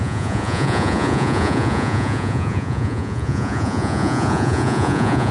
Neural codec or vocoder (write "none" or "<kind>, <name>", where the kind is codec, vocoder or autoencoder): vocoder, Vocos